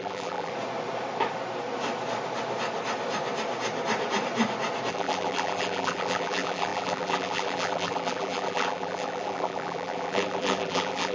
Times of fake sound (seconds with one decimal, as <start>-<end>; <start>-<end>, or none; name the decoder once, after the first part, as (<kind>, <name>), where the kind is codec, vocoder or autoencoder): 0.0-0.5 (vocoder, BigVGAN v2); 4.9-11.1